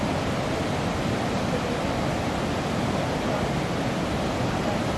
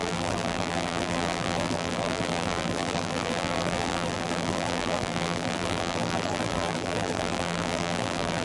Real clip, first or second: first